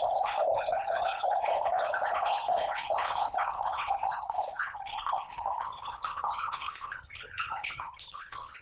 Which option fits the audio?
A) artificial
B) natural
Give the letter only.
A